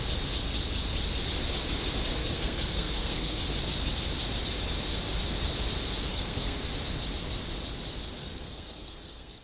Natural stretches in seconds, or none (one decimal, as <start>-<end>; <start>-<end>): 0.0-2.2; 3.4-6.1; 6.7-8.2